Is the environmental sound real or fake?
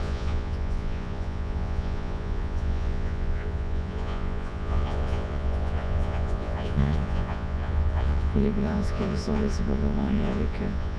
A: fake